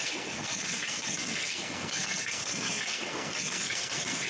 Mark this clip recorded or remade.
remade